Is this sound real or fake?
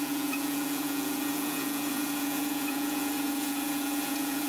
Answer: fake